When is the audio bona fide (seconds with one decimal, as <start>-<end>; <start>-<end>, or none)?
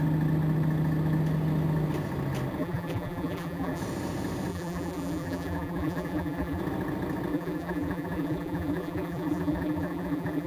0.0-2.6; 3.8-4.5; 6.6-7.3